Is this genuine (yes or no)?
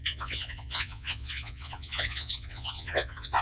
no